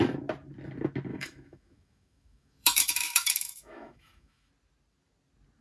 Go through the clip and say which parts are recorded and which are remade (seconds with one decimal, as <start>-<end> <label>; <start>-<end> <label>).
0.0-1.1 recorded; 1.1-4.5 remade; 4.5-5.6 recorded